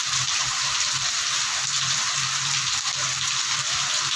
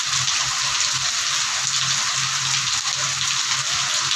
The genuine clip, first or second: second